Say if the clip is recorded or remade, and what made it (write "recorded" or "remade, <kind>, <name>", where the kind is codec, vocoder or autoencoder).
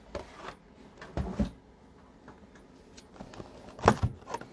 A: recorded